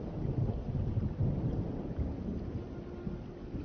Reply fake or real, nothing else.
real